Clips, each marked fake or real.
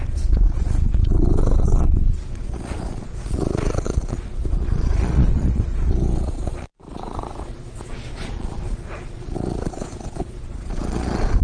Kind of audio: fake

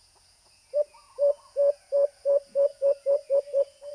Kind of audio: fake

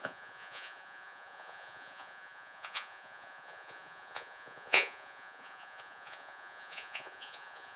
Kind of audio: fake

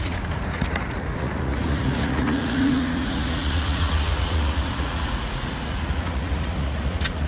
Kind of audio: fake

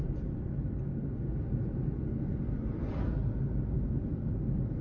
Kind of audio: real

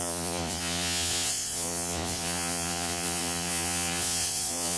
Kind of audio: fake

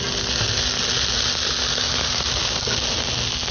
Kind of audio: real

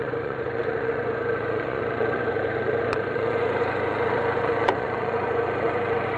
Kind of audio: fake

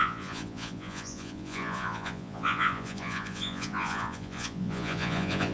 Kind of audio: fake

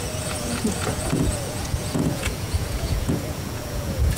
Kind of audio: fake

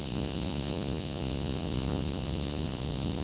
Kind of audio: fake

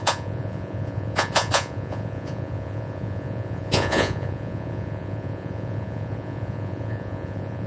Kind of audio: fake